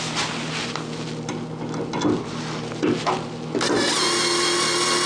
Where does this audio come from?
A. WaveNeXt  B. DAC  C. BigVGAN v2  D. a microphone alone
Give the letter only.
D